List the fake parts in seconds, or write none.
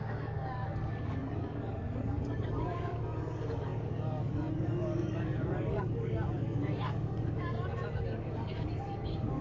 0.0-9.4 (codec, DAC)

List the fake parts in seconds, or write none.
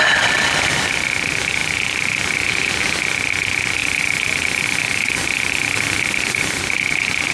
3.8-6.6 (vocoder, BigVGAN v2)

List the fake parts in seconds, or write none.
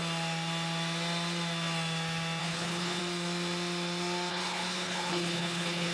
2.4-3.0 (codec, HILCodec); 4.3-5.9